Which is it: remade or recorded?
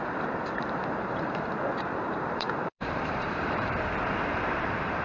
remade